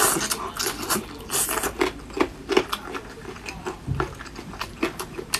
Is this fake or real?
real